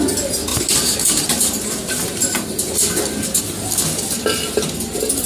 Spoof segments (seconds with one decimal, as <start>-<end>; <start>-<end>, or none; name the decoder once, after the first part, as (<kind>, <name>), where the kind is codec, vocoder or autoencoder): none